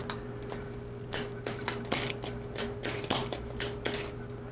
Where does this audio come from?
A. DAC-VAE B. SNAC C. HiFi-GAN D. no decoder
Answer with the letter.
D